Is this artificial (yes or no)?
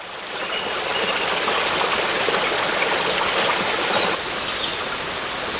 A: no